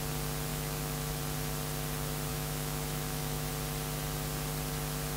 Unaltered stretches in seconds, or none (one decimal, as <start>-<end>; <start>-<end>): 0.0-0.5; 1.2-2.3; 3.5-5.2